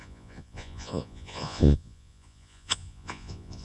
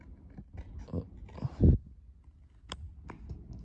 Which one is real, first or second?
second